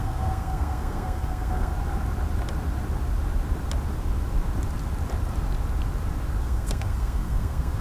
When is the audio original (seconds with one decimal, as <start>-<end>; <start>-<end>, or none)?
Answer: 1.7-6.4